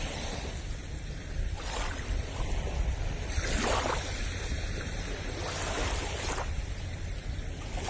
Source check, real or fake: fake